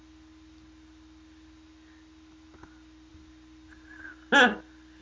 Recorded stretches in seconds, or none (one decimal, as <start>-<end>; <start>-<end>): 0.0-5.0